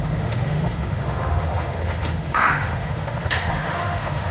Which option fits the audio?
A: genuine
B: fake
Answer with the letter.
B